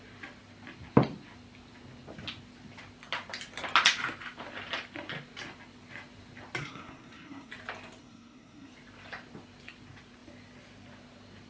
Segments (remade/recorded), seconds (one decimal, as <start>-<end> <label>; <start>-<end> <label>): 0.0-6.6 recorded; 6.6-7.5 remade; 7.5-8.0 recorded; 8.0-8.7 remade; 8.7-11.5 recorded